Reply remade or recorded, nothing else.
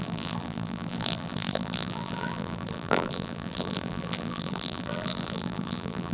remade